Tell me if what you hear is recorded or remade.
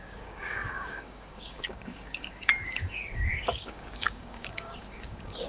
remade